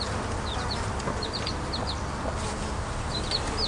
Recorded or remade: recorded